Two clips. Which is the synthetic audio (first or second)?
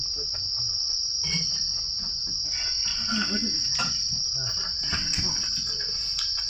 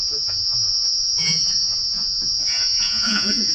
second